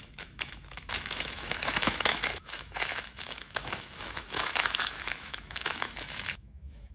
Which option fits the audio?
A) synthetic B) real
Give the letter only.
A